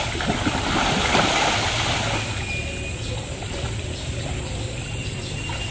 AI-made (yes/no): no